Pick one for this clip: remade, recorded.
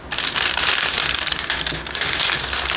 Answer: recorded